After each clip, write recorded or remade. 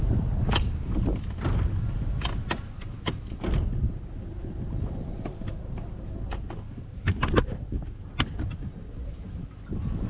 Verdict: recorded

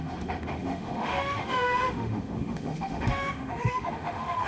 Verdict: remade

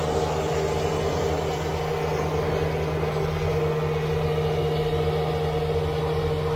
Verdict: recorded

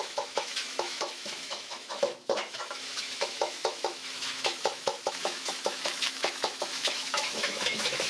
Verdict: remade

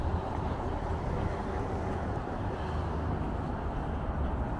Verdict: recorded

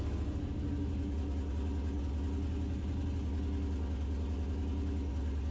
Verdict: recorded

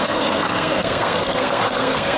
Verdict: remade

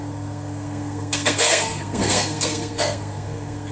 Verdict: remade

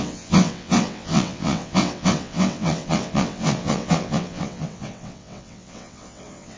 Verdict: remade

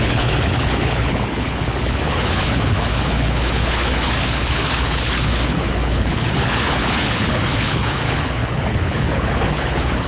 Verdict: remade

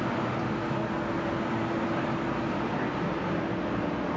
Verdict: recorded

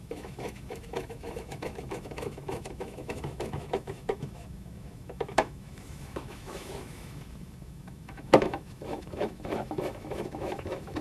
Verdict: remade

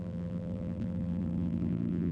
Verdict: remade